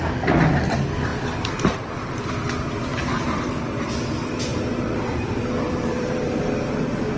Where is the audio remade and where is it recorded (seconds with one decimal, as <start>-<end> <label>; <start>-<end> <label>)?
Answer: 0.0-2.9 recorded; 2.9-3.7 remade; 3.7-4.5 recorded; 4.5-7.2 remade